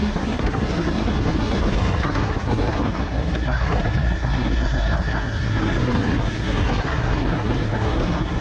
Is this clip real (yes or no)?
no